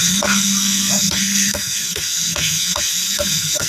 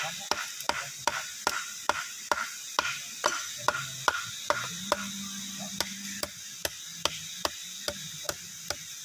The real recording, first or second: second